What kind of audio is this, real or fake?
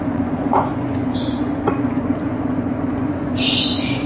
fake